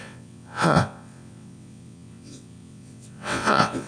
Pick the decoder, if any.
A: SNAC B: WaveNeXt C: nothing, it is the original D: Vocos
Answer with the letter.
B